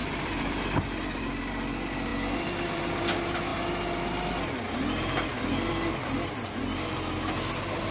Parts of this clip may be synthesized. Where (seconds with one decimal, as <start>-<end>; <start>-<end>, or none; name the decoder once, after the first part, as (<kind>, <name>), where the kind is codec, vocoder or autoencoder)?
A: 0.0-1.4 (vocoder, BigVGAN v2); 2.1-3.0